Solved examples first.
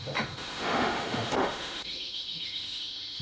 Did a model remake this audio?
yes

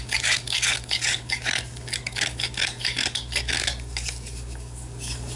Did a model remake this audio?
yes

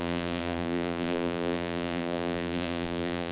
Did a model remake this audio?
yes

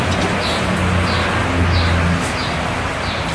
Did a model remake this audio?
no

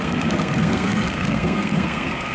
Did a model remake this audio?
yes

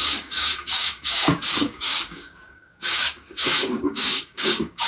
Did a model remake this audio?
yes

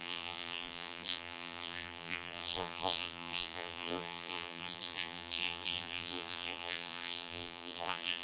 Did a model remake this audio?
yes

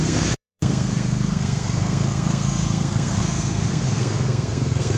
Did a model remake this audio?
yes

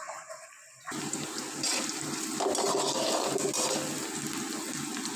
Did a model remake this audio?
no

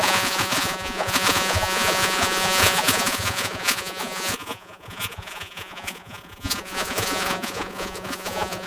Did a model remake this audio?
yes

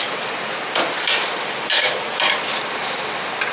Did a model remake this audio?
yes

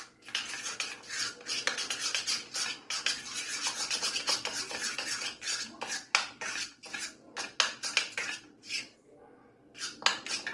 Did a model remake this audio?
no